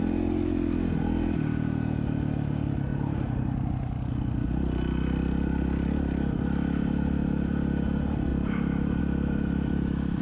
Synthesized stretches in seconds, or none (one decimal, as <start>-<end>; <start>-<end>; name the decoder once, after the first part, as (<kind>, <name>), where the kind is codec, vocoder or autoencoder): 2.9-3.7 (vocoder, BigVGAN v2); 8.3-9.0